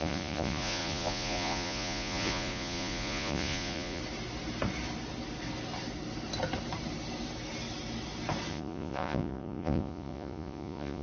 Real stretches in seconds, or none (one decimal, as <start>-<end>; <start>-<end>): 4.0-8.5